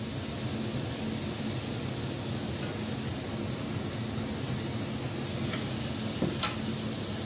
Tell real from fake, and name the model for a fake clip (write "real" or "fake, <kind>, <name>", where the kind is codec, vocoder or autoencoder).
real